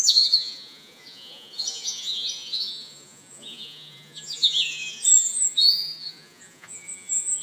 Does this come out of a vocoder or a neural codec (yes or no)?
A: yes